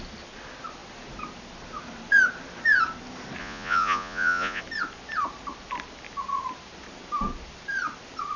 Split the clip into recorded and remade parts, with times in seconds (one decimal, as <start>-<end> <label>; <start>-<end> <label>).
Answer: 0.0-3.4 recorded; 3.4-4.6 remade; 4.6-8.4 recorded